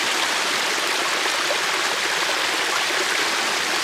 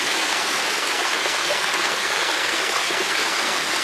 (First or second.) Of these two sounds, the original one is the first